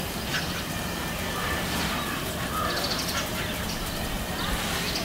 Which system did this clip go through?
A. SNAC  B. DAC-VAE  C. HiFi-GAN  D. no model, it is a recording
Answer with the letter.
D